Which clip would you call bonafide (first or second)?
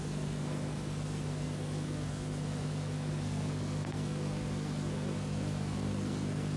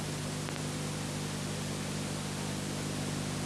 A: second